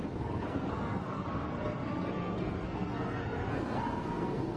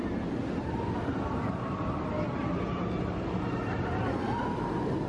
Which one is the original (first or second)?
second